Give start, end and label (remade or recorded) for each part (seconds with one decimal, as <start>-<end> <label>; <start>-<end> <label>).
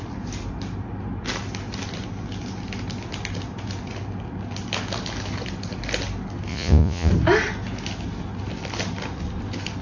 0.0-6.5 recorded; 6.5-7.1 remade; 7.1-9.8 recorded